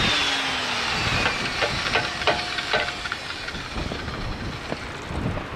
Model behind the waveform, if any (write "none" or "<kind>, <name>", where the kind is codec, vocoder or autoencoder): none